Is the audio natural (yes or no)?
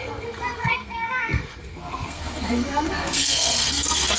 no